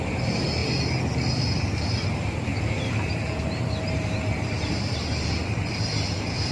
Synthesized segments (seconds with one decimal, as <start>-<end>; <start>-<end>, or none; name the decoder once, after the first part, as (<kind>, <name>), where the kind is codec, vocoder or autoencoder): 0.0-0.6 (vocoder, BigVGAN v2); 1.3-6.5